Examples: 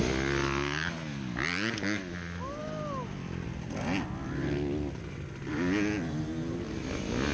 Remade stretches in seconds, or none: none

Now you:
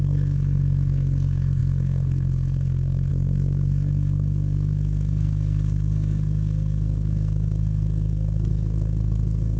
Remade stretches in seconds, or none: 0.0-9.6

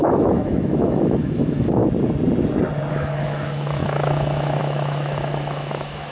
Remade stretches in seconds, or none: 0.0-1.8; 2.9-6.1

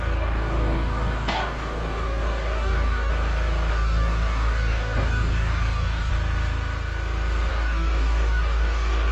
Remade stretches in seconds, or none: 0.0-3.1; 3.7-6.1; 7.5-9.1

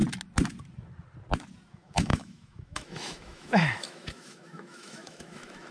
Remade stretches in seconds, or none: 1.7-5.7